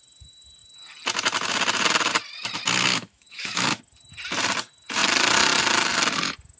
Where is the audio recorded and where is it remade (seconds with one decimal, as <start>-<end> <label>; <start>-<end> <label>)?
0.0-2.9 recorded; 2.9-3.8 remade; 3.8-6.6 recorded